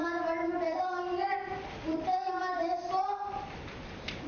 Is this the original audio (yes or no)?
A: yes